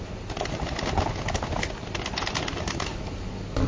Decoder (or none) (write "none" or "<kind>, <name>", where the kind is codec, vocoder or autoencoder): none